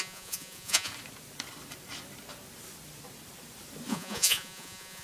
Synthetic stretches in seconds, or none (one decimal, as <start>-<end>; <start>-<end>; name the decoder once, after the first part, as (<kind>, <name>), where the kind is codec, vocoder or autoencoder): 0.0-0.9 (vocoder, Vocos); 3.9-5.0